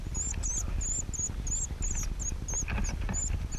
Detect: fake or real real